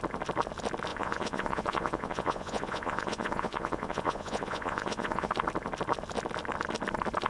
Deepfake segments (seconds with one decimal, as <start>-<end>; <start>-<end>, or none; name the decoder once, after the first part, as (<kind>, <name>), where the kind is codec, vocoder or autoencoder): 0.9-5.3 (vocoder, Vocos)